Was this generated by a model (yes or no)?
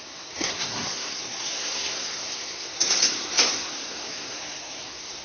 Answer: yes